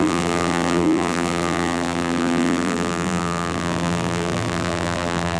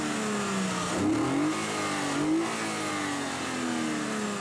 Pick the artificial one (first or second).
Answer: first